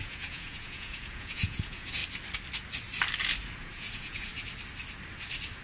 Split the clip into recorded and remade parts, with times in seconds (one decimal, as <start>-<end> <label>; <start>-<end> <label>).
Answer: 0.0-2.0 remade; 2.0-3.6 recorded; 3.6-4.3 remade; 4.3-5.6 recorded